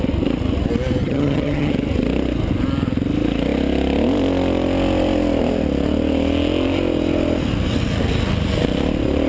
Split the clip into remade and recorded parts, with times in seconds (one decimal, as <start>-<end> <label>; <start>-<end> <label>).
0.0-1.0 recorded; 1.0-1.7 remade; 1.7-9.3 recorded